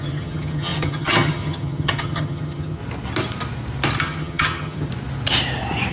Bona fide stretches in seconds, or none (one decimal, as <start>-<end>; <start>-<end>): 2.8-4.0; 4.9-5.9